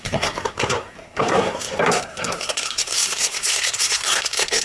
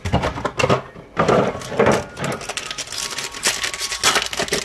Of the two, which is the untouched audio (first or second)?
second